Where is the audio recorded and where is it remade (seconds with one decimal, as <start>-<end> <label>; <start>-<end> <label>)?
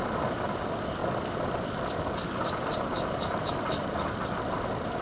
0.0-5.0 recorded